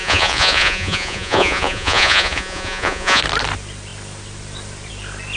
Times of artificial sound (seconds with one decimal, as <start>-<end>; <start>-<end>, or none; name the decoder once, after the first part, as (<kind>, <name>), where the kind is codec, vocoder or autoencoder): 0.0-3.2 (vocoder, Vocos)